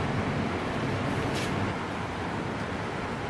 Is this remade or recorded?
recorded